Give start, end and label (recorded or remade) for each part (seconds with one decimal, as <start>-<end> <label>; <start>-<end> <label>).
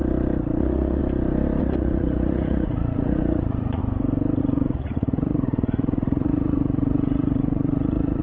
0.0-0.6 recorded; 0.6-1.0 remade; 1.0-1.6 recorded; 1.6-3.8 remade; 3.8-4.4 recorded; 4.4-8.2 remade